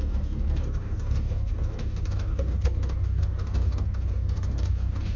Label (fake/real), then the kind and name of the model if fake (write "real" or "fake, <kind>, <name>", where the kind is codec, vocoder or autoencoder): fake, codec, DAC